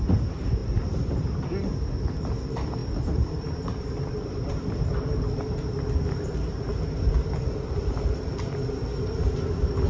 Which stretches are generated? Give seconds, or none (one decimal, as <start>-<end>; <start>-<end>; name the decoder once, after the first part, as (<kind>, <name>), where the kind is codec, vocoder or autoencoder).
2.8-4.7 (vocoder, BigVGAN v2)